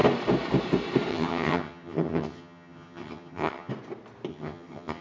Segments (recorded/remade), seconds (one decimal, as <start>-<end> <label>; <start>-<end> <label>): 0.0-1.1 recorded; 1.1-3.7 remade; 3.7-4.3 recorded; 4.3-5.0 remade